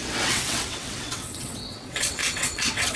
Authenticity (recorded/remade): remade